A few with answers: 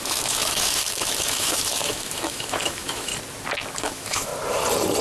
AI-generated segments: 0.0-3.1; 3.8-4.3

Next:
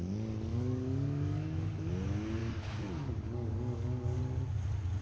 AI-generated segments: 0.5-1.9; 2.4-4.2

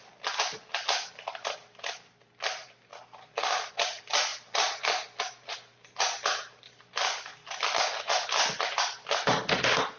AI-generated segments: 7.3-8.6

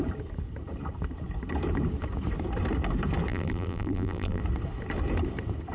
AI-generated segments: 3.3-4.4